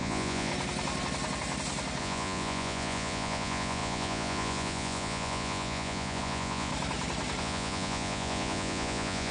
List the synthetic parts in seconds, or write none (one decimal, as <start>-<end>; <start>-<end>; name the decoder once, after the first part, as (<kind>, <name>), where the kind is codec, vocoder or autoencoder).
0.0-0.5 (vocoder, Vocos); 2.0-6.7; 7.4-9.3